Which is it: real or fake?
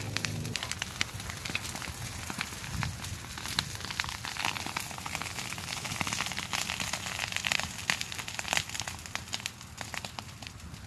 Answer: real